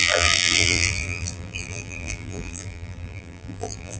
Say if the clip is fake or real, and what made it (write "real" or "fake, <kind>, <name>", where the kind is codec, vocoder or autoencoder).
fake, vocoder, BigVGAN v2